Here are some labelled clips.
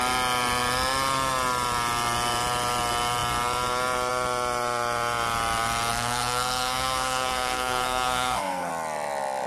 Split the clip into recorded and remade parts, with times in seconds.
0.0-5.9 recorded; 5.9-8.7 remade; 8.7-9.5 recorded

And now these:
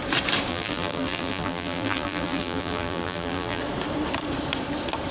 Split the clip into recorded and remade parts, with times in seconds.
0.0-0.5 recorded; 0.5-3.6 remade; 3.6-5.1 recorded

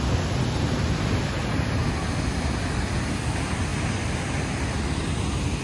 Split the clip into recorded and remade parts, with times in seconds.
0.0-5.6 recorded